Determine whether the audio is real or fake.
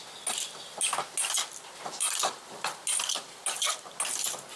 real